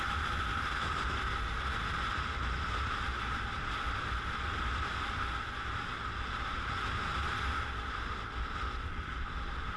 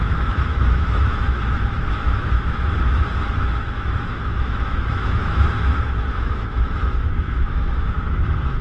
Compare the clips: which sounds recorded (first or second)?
first